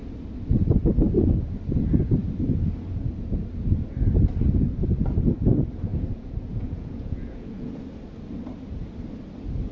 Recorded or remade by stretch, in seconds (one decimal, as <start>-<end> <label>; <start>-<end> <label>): 0.0-5.9 recorded; 5.9-7.8 remade; 7.8-9.7 recorded